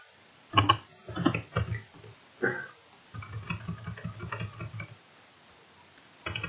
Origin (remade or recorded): recorded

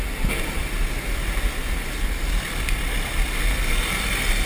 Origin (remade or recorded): recorded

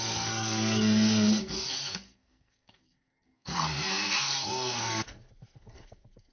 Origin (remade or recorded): remade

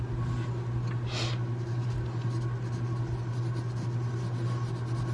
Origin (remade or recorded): recorded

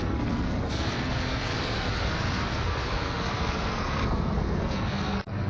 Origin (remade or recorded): remade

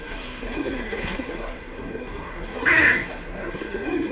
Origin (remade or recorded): remade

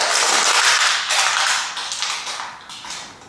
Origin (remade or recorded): recorded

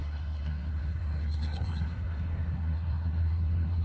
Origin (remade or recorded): remade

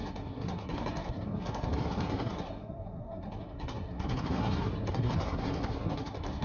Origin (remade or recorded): remade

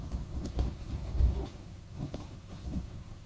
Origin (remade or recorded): remade